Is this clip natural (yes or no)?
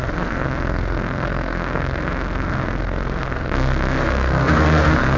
no